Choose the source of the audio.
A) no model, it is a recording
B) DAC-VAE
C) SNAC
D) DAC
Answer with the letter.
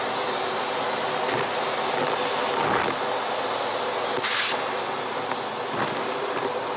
A